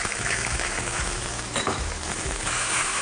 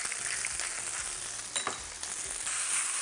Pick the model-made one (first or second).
first